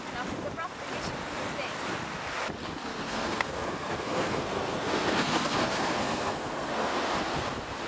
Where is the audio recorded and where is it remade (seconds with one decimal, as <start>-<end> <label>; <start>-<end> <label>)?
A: 0.0-2.9 recorded; 2.9-7.1 remade; 7.1-7.9 recorded